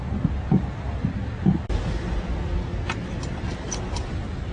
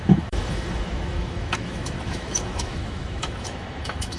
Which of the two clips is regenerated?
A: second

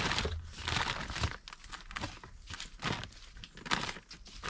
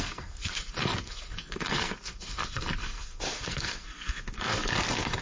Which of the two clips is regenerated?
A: second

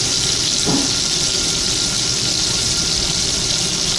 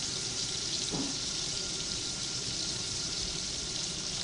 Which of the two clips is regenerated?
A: second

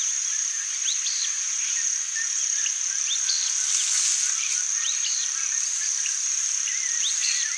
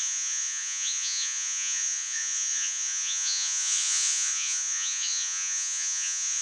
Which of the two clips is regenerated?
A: second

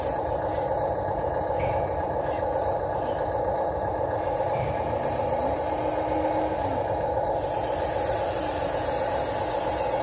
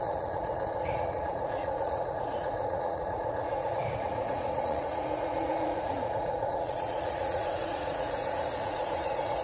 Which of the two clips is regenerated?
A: second